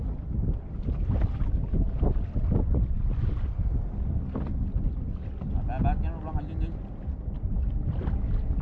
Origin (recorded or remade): recorded